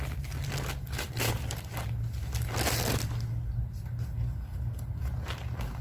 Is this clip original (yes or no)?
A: yes